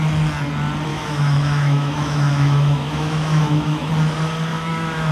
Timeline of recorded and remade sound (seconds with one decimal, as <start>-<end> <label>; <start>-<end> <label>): 0.0-0.9 recorded; 0.9-3.9 remade; 3.9-4.5 recorded; 4.5-5.1 remade